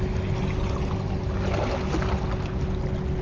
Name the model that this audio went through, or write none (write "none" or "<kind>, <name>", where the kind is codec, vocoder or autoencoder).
none